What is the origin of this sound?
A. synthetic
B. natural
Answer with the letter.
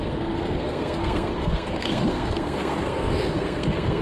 A